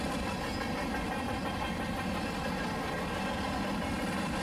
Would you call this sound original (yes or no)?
yes